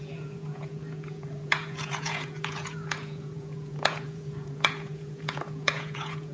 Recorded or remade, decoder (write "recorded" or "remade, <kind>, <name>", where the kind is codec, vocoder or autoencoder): remade, vocoder, Vocos